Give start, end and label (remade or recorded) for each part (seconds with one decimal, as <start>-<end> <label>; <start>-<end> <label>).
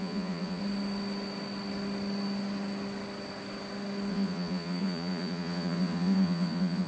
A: 0.0-0.6 remade; 0.6-4.1 recorded; 4.1-6.9 remade